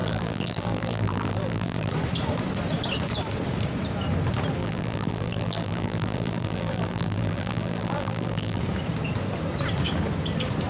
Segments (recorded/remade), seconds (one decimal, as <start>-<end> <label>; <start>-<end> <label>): 0.0-1.9 remade; 1.9-4.6 recorded; 4.6-8.6 remade; 8.6-10.7 recorded